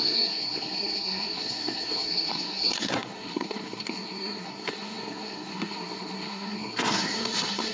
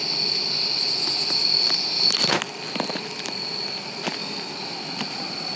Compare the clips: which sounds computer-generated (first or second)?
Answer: first